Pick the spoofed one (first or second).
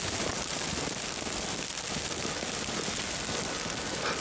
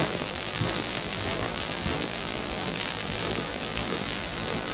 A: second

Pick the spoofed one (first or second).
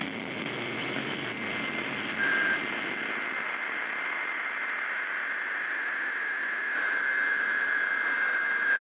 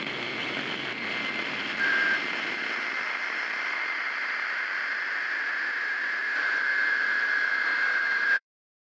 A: second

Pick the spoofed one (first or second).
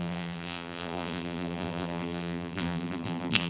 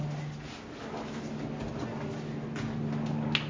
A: first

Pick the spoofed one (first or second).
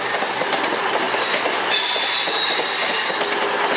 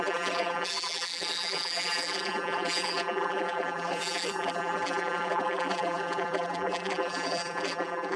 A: second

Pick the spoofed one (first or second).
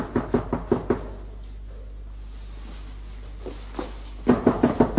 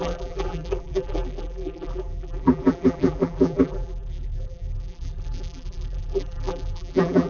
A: second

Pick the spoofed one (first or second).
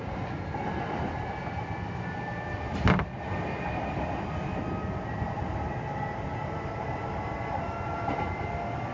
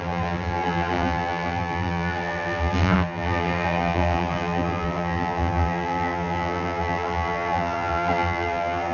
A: second